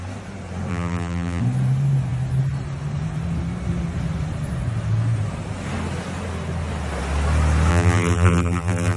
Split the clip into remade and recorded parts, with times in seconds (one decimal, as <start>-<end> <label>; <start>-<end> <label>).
0.0-0.7 recorded; 0.7-1.4 remade; 1.4-7.7 recorded; 7.7-9.0 remade